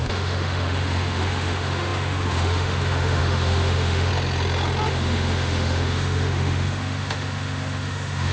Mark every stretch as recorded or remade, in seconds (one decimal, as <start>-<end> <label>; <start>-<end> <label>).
0.0-4.1 remade; 4.1-4.9 recorded; 4.9-8.3 remade